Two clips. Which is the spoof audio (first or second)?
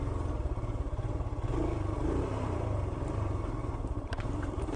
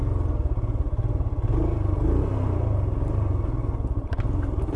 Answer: first